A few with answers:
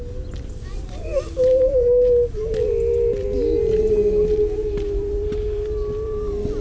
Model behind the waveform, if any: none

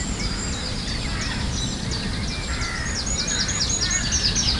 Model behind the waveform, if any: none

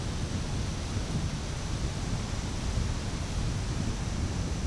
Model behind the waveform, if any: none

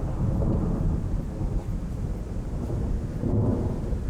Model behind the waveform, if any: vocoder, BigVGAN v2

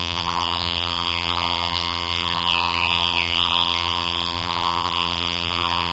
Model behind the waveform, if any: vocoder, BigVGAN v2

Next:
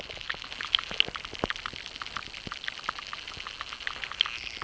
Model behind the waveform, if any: none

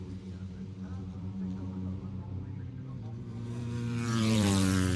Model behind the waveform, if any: vocoder, BigVGAN v2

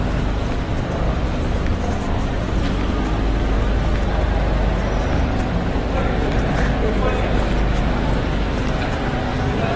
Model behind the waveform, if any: none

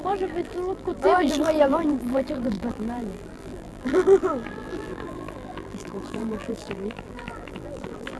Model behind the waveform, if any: vocoder, BigVGAN v2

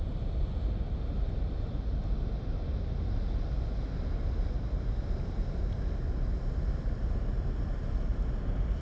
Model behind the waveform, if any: none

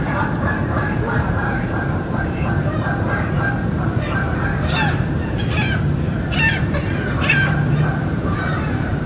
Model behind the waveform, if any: vocoder, BigVGAN v2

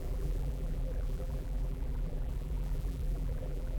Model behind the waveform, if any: vocoder, BigVGAN v2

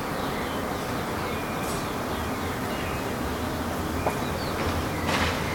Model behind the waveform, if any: none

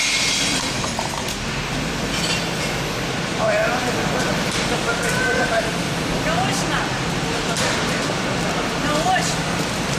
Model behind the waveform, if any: vocoder, BigVGAN v2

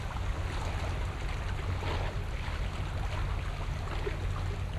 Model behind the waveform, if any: none